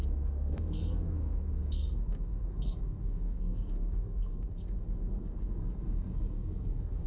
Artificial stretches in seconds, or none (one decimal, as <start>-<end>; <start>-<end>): 0.0-7.1